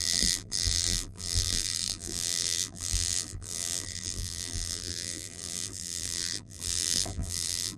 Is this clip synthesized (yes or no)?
yes